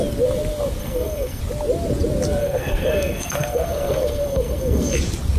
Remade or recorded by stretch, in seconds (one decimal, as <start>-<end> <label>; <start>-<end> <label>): 0.0-0.8 recorded; 0.8-1.4 remade; 1.4-2.4 recorded; 2.4-5.0 remade; 5.0-5.4 recorded